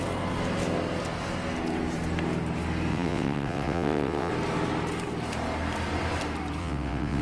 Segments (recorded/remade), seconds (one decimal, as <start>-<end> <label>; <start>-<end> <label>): 0.0-2.9 recorded; 2.9-4.3 remade; 4.3-6.6 recorded; 6.6-7.2 remade